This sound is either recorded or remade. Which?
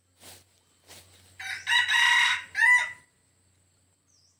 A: recorded